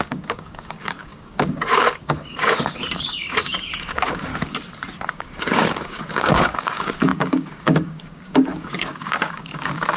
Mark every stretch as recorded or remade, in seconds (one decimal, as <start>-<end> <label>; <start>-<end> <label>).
0.0-4.3 remade; 4.3-5.1 recorded; 5.1-10.0 remade